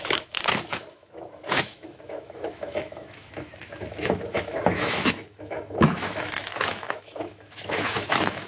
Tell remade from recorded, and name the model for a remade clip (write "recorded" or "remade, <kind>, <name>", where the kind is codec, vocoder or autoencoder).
remade, autoencoder, DAC-VAE